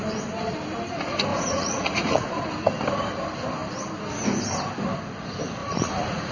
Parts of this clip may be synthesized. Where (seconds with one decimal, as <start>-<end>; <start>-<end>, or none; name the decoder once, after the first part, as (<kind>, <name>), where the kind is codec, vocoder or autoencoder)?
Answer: 1.3-2.3 (vocoder, Vocos); 5.6-6.3